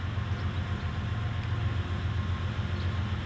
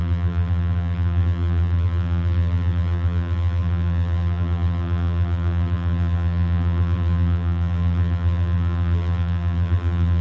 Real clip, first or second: first